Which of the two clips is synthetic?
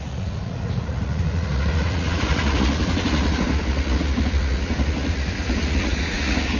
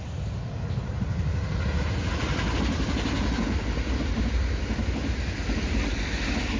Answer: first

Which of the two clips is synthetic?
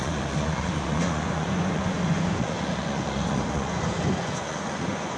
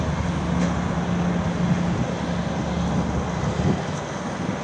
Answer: first